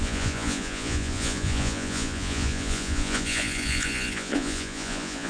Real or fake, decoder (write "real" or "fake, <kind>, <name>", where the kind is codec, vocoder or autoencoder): fake, vocoder, Vocos